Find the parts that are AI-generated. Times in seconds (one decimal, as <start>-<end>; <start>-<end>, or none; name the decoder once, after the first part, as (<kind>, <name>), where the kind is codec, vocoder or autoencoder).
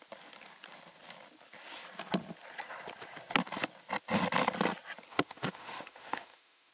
5.1-6.7 (autoencoder, DAC-VAE)